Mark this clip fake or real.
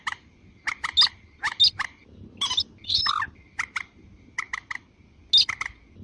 real